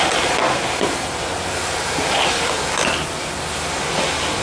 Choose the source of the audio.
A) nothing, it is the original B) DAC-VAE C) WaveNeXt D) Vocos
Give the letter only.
A